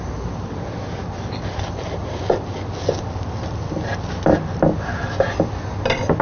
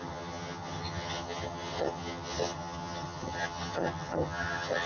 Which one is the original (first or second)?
first